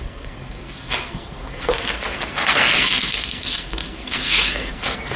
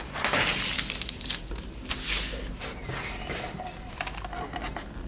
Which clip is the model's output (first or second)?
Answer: first